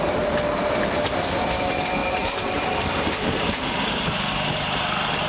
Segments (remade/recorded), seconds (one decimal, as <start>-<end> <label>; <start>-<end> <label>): 0.0-2.0 recorded; 2.0-5.3 remade